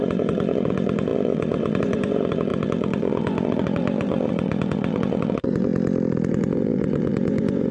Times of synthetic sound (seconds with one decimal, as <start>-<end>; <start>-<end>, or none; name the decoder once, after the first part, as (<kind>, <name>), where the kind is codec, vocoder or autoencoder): 0.0-5.7 (vocoder, Vocos); 6.3-7.7

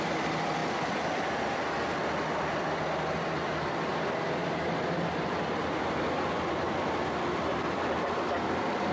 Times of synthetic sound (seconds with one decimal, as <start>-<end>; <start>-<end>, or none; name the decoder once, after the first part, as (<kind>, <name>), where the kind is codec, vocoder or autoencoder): 0.0-8.9 (vocoder, BigVGAN v2)

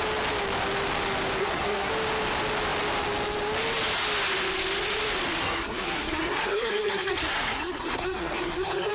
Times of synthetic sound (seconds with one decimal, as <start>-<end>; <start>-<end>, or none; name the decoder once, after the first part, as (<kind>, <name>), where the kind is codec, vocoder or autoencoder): 1.4-1.9 (codec, SNAC); 5.4-8.9

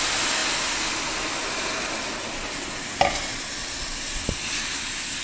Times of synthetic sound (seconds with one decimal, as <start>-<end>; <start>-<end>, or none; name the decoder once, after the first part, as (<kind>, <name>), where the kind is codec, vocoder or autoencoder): none

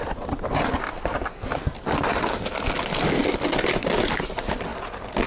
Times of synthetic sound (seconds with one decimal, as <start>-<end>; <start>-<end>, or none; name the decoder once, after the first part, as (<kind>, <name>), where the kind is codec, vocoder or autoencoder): none

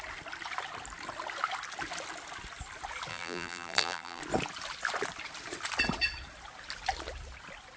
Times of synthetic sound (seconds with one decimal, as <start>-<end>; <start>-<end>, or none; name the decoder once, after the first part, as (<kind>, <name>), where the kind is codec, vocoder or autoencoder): 3.1-4.2 (vocoder, BigVGAN v2)